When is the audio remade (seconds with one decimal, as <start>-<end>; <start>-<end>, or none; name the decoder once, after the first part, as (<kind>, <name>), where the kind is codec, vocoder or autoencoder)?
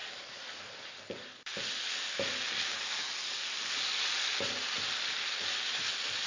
none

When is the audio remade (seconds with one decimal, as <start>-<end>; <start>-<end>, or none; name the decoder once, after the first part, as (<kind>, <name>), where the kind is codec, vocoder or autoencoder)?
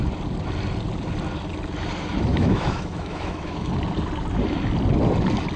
2.3-3.7 (autoencoder, DAC-VAE)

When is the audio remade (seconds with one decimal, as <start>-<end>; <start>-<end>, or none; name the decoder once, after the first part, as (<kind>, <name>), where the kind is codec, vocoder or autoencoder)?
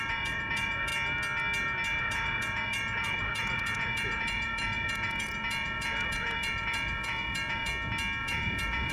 0.0-0.9 (vocoder, Vocos); 2.0-7.7; 8.2-8.9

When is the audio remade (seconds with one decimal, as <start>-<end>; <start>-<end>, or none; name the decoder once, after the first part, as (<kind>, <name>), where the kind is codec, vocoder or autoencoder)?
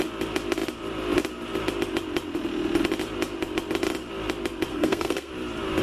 4.7-5.3 (codec, SNAC)